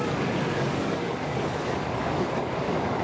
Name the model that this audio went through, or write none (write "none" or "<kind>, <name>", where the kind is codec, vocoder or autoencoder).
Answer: codec, DAC